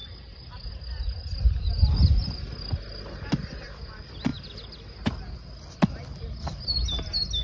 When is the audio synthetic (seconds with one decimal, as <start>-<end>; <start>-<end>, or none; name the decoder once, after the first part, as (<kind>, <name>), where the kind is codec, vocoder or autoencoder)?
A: none